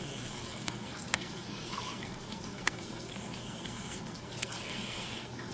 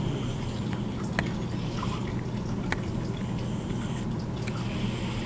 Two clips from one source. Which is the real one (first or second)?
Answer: second